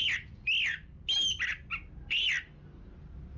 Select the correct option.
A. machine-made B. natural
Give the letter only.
B